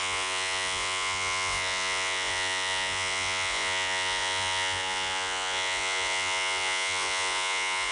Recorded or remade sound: remade